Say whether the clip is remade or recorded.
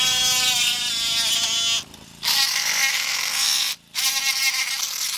recorded